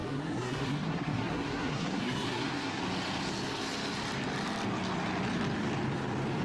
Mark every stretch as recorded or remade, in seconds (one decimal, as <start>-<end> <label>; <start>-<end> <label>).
0.0-2.8 remade; 2.8-6.4 recorded